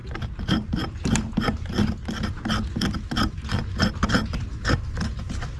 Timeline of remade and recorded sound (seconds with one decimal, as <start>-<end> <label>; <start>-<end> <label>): 0.0-5.6 recorded